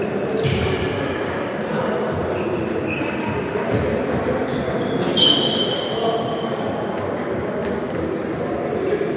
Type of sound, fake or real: real